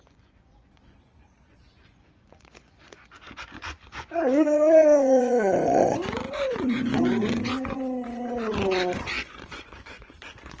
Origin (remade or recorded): remade